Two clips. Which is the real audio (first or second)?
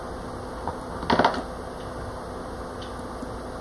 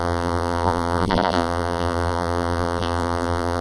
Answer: first